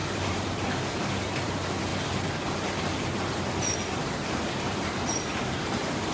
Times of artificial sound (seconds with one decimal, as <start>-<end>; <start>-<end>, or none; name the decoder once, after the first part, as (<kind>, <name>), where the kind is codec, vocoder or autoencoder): 0.0-6.1 (vocoder, BigVGAN v2)